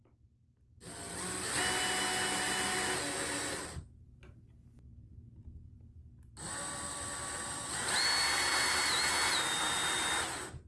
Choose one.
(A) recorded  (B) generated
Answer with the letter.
A